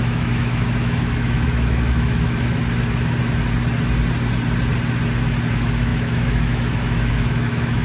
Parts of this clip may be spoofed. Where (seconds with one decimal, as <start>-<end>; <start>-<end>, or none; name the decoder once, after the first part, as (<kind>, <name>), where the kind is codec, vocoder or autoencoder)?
0.0-2.6 (autoencoder, DAC-VAE); 5.5-7.8